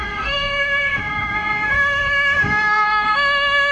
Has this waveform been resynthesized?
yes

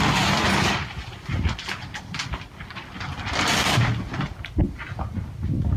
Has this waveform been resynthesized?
no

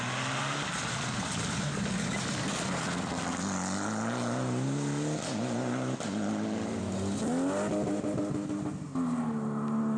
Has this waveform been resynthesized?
no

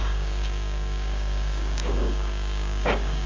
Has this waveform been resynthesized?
yes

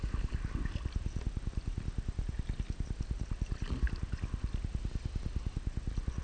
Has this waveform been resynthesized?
no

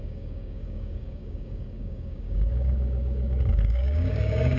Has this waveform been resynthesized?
yes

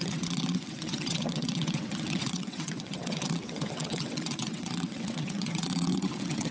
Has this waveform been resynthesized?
yes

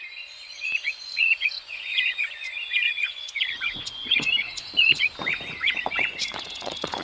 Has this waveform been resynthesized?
yes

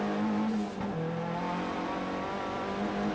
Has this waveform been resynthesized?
no